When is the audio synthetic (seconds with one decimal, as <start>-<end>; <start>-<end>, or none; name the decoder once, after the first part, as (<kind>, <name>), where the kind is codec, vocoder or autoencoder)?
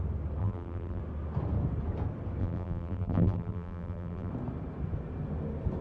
0.4-1.0 (vocoder, BigVGAN v2); 2.4-4.3